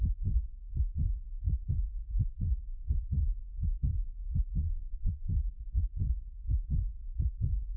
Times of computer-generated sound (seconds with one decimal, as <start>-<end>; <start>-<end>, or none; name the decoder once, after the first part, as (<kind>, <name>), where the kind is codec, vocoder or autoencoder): 4.6-5.3 (vocoder, Vocos)